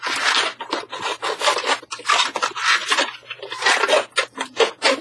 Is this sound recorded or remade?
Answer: recorded